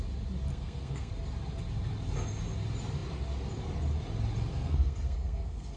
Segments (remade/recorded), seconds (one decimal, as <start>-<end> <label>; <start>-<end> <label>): 0.0-0.5 recorded; 0.5-1.1 remade; 1.1-4.5 recorded; 4.5-5.8 remade